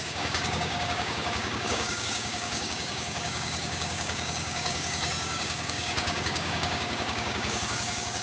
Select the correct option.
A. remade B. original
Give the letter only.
A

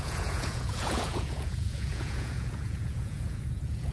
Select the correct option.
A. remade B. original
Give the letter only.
A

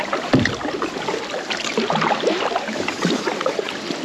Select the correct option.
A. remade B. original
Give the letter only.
B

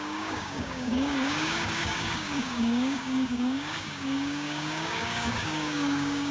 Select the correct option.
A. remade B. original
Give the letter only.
A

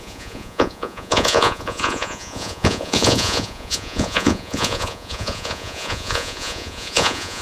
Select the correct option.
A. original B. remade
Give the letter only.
B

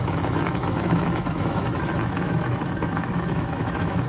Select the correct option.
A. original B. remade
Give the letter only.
B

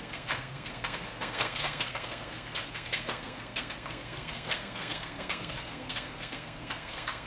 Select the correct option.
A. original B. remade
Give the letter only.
B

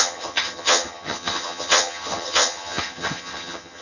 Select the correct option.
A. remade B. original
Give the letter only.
A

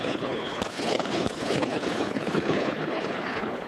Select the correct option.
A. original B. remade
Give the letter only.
B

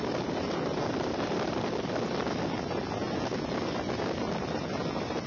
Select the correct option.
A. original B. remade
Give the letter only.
A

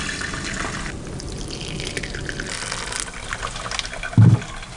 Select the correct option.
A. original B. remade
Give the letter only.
A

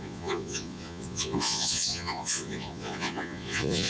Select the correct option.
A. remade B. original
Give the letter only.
A